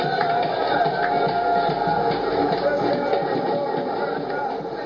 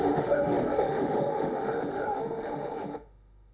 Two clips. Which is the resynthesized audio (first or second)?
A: second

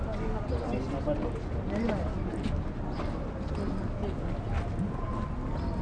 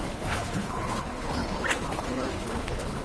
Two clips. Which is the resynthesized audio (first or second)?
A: second